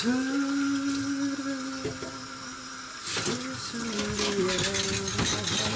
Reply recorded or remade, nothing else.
recorded